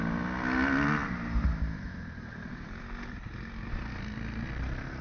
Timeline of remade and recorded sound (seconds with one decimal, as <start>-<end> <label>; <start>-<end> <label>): 0.0-5.0 recorded